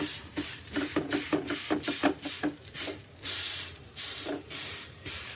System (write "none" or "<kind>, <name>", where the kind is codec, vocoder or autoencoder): vocoder, BigVGAN v2